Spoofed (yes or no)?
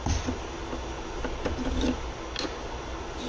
no